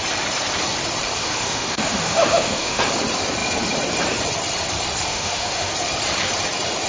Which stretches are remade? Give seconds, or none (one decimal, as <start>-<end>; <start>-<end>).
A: 1.2-2.8; 5.1-5.7